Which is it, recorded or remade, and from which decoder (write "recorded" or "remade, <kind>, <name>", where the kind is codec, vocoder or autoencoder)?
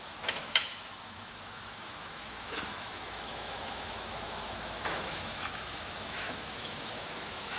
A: remade, autoencoder, DAC-VAE